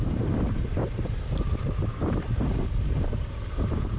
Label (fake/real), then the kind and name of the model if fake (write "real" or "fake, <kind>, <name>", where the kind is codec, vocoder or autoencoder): fake, vocoder, BigVGAN v2